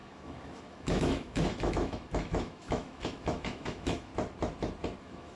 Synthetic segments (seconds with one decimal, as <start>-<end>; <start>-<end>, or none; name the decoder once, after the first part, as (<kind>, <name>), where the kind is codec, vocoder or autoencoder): 0.0-4.1 (autoencoder, DAC-VAE); 5.0-5.4